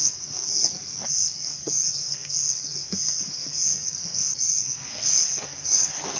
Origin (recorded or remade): remade